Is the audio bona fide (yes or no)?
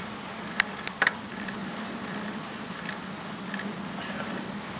yes